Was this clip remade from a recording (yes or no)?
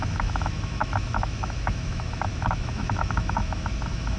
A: yes